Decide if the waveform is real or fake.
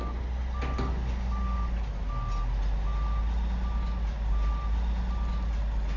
real